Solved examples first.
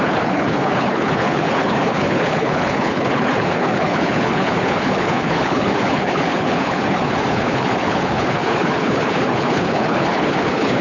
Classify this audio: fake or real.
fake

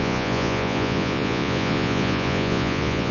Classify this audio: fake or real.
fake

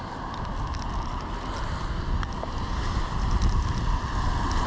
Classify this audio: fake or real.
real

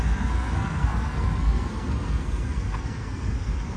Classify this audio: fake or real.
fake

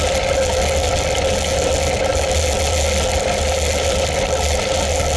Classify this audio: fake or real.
real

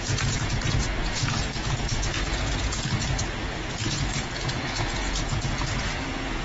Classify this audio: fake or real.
fake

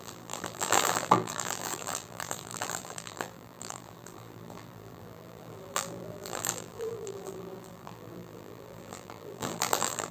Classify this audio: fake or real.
fake